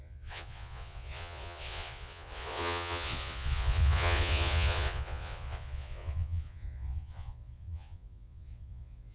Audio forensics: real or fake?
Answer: fake